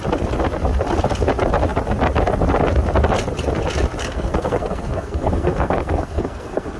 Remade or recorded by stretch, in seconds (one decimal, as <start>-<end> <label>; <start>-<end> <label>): 0.0-4.0 recorded; 4.0-6.8 remade